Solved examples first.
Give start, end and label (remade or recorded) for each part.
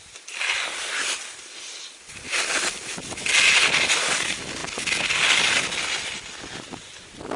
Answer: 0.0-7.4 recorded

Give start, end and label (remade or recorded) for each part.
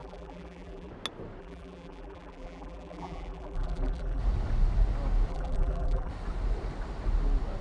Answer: 0.0-0.9 remade; 0.9-1.4 recorded; 1.4-4.2 remade; 4.2-5.3 recorded; 5.3-6.1 remade; 6.1-7.6 recorded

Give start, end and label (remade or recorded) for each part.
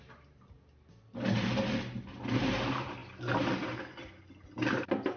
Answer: 0.0-5.2 recorded